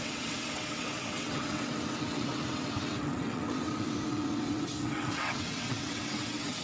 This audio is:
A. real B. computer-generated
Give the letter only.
B